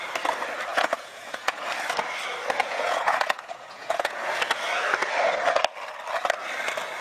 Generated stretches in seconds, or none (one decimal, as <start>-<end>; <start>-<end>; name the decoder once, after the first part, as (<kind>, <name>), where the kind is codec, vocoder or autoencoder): 0.7-1.6 (vocoder, Vocos); 2.6-4.3